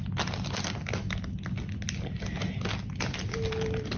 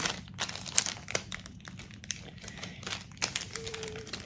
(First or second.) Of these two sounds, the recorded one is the first